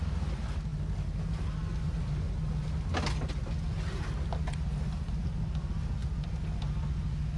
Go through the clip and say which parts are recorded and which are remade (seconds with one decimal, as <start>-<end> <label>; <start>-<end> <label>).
0.0-7.4 recorded